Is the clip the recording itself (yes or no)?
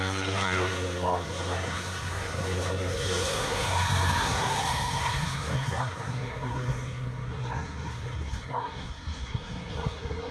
no